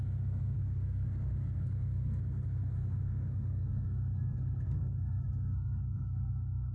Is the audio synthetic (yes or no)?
yes